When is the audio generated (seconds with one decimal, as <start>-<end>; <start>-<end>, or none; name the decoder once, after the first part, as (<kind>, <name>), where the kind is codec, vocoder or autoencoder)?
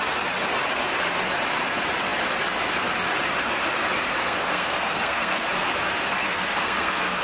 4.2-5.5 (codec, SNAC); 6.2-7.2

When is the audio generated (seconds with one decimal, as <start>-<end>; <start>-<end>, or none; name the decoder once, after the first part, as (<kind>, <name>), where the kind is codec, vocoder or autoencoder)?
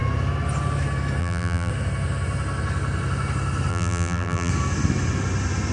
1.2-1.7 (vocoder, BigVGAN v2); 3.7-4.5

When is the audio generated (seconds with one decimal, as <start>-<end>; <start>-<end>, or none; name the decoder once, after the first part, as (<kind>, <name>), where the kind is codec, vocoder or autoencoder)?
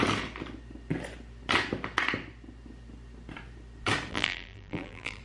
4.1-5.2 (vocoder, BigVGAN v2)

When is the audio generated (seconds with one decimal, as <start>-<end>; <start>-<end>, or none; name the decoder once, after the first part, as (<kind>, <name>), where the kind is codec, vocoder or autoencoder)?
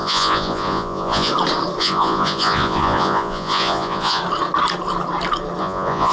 0.0-1.3 (vocoder, Vocos); 1.8-4.2; 5.6-6.1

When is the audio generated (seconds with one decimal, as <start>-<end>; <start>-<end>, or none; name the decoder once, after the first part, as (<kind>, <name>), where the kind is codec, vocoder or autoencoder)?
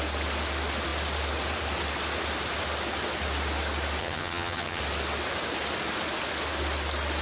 4.0-4.8 (vocoder, HiFi-GAN)